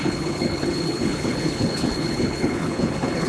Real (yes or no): no